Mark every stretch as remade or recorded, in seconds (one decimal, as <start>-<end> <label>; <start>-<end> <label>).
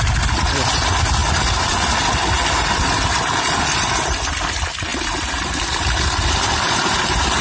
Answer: 0.0-7.4 recorded